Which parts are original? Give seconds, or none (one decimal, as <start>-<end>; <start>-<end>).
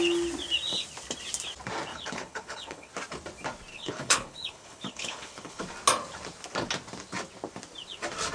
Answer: 0.0-1.9; 2.9-3.7; 5.6-8.3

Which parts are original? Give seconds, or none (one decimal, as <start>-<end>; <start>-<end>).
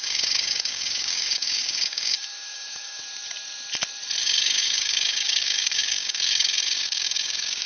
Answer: 3.0-4.2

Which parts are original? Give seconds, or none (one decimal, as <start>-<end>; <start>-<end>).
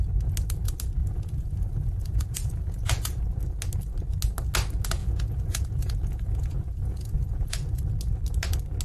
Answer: 0.0-1.0; 3.2-5.0; 7.8-8.8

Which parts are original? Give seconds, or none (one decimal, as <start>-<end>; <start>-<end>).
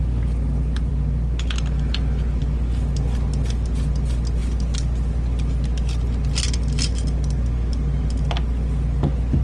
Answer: 0.0-9.4